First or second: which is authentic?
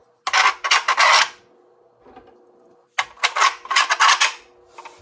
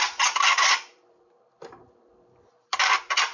first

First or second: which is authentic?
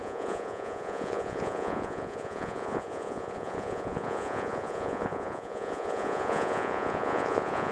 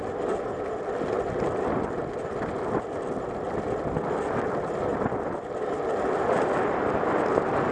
second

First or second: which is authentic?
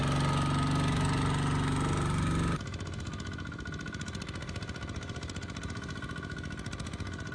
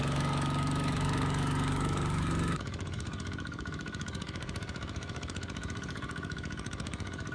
first